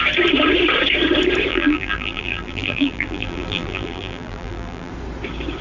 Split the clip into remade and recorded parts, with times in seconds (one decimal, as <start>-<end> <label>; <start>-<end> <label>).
0.0-1.5 recorded; 1.5-4.9 remade; 4.9-5.6 recorded